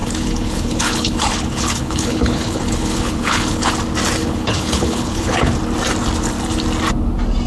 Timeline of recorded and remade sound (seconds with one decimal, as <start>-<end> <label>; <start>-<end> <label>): 0.0-3.7 remade; 3.7-4.2 recorded; 4.2-5.5 remade; 5.5-7.5 recorded